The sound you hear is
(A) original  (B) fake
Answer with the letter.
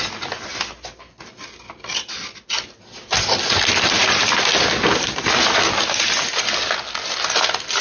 A